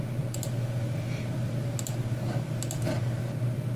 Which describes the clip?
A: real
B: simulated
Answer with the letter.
A